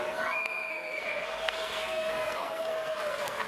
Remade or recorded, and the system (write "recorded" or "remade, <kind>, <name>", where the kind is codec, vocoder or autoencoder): remade, codec, SNAC